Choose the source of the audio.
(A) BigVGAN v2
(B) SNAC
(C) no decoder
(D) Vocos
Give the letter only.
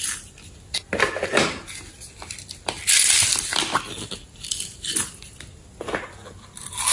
C